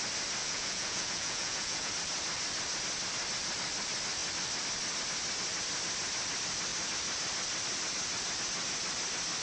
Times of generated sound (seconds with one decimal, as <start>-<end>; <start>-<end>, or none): 0.4-1.9